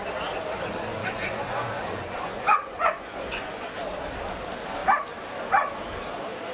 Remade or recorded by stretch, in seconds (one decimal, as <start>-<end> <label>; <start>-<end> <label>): 0.0-1.0 recorded; 1.0-3.7 remade; 3.7-6.5 recorded